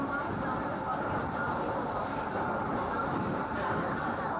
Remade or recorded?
recorded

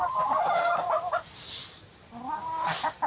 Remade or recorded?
recorded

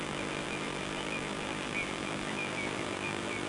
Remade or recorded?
remade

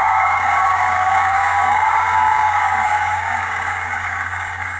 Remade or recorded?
remade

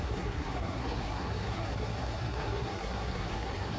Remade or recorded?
remade